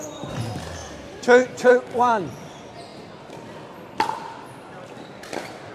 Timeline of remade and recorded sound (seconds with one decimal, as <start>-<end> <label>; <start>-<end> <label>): 0.0-5.7 recorded